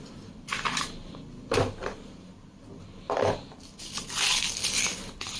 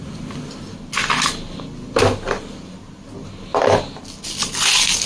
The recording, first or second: second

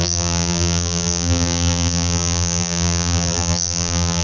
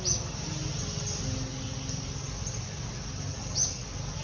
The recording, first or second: second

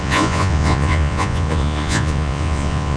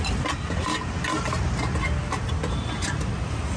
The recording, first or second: second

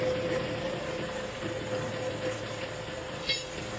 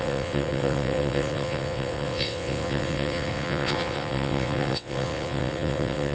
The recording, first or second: first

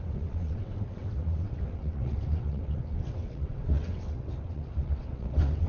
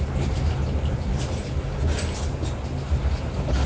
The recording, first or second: second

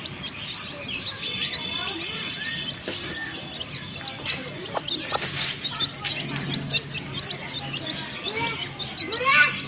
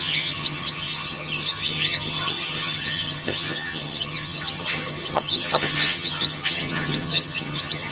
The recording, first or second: first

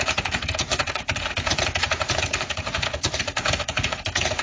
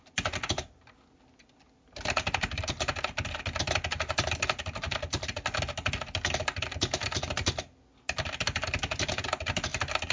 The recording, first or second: second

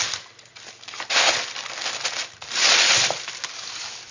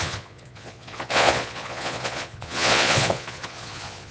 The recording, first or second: first